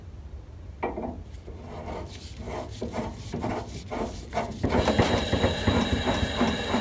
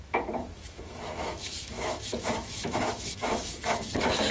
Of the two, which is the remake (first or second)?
second